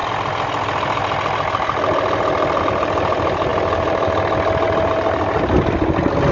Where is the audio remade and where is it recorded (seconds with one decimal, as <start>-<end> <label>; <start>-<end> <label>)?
0.0-6.3 recorded